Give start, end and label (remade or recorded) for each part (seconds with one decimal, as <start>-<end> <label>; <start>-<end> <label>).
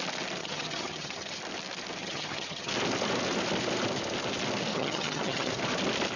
0.0-0.4 recorded; 0.4-1.4 remade; 1.4-2.0 recorded; 2.0-2.7 remade; 2.7-4.7 recorded; 4.7-5.5 remade; 5.5-6.2 recorded